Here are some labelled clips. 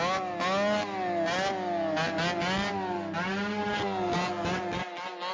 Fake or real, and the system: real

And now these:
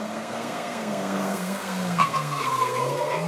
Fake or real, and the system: fake, codec, SNAC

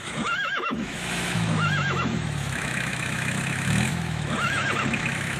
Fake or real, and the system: fake, autoencoder, DAC-VAE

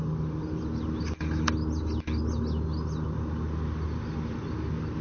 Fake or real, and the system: real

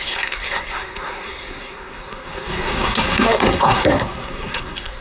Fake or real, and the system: fake, codec, SNAC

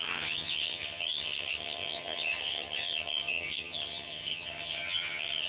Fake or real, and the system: fake, vocoder, HiFi-GAN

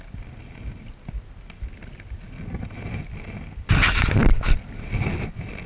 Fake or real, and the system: real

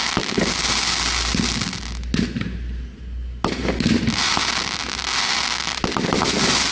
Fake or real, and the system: real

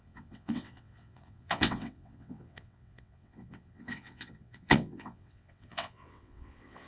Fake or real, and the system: fake, vocoder, WaveNeXt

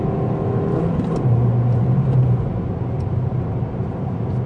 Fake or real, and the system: real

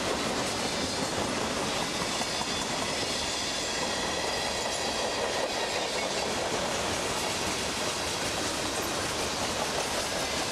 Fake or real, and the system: real